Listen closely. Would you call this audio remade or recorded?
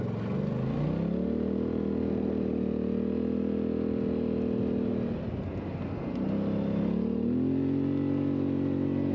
recorded